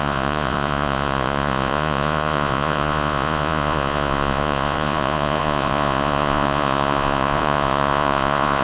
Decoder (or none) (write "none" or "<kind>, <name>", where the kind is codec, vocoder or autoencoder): vocoder, Vocos